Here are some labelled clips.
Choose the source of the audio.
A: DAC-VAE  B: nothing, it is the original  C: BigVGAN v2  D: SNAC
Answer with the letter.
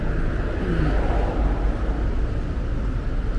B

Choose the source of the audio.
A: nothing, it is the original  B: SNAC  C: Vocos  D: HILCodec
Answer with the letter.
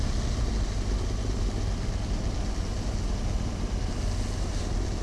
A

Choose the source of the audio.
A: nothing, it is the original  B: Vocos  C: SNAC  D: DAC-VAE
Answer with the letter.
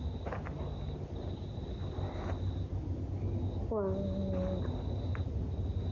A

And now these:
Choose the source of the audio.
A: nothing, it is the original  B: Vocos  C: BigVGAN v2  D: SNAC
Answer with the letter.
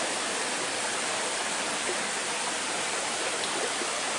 A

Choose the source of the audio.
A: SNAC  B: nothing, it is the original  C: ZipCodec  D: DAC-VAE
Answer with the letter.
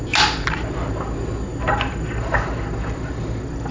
B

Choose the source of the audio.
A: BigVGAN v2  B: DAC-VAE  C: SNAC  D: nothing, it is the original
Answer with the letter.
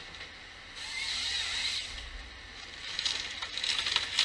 D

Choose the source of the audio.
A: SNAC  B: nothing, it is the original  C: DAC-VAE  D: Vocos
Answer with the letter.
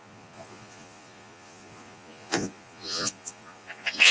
D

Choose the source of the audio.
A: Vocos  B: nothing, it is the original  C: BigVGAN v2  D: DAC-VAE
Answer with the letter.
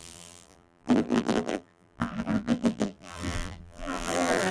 C